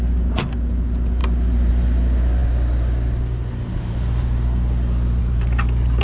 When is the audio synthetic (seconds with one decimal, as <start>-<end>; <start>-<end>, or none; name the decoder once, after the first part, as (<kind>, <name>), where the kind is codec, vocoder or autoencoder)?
5.2-6.0 (vocoder, BigVGAN v2)